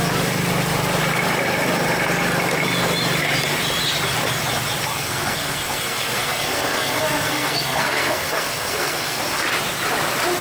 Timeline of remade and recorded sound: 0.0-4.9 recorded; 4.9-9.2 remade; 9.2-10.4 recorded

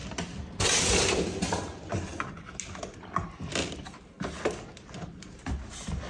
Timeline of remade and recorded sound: 0.0-6.1 recorded

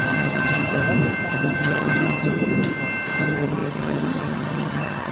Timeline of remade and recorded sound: 0.0-0.8 remade; 0.8-1.3 recorded; 1.3-2.5 remade; 2.5-3.2 recorded; 3.2-5.1 remade

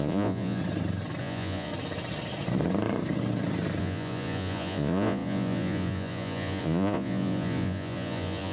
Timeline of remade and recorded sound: 0.0-0.6 remade; 0.6-1.2 recorded; 1.2-1.7 remade; 1.7-3.8 recorded; 3.8-8.5 remade

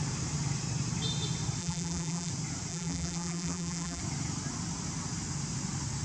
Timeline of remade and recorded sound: 0.0-1.6 recorded; 1.6-2.3 remade; 2.3-2.7 recorded; 2.7-4.0 remade; 4.0-6.0 recorded

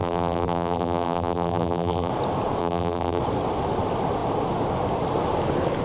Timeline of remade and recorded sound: 0.0-2.1 remade; 2.1-2.6 recorded; 2.6-3.2 remade; 3.2-5.8 recorded

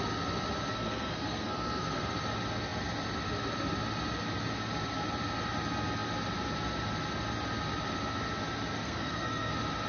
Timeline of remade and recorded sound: 0.0-0.7 recorded; 0.7-2.1 remade; 2.1-8.8 recorded; 8.8-9.5 remade; 9.5-9.9 recorded